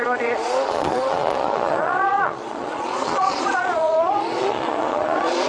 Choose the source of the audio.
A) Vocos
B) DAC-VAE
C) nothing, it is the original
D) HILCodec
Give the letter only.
A